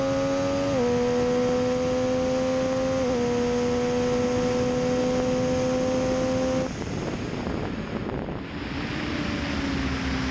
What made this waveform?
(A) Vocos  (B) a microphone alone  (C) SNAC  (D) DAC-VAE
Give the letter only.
B